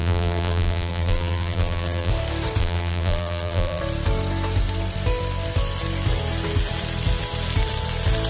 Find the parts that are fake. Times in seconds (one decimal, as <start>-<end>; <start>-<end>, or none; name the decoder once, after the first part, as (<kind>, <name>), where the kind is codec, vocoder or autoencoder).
0.0-2.1 (vocoder, BigVGAN v2); 2.6-3.8